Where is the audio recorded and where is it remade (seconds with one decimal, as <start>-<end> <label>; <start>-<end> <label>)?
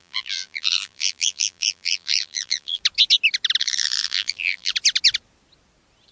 0.0-2.8 remade; 2.8-3.6 recorded; 3.6-4.7 remade; 4.7-6.1 recorded